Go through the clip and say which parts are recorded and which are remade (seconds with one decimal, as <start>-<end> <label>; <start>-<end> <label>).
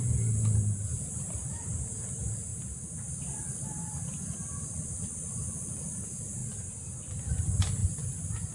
0.0-6.4 recorded; 6.4-7.3 remade; 7.3-7.8 recorded; 7.8-8.5 remade